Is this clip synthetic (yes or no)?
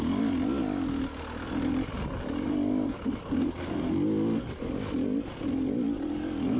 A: no